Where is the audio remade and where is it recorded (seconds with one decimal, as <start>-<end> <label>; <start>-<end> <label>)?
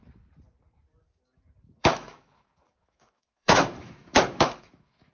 0.0-1.8 recorded; 1.8-5.1 remade